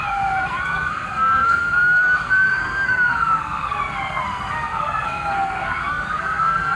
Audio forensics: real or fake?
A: fake